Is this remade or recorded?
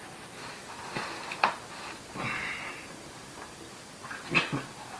recorded